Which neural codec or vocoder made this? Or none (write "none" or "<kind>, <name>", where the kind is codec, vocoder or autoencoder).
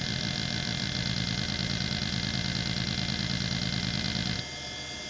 none